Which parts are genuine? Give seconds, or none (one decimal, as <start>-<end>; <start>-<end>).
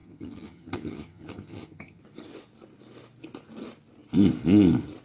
2.0-5.0